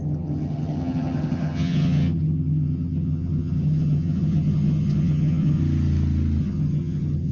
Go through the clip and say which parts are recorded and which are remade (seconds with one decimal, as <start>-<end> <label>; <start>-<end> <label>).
0.0-5.6 remade; 5.6-6.4 recorded; 6.4-7.3 remade